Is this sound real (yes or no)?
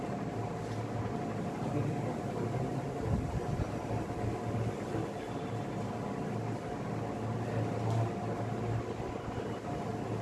yes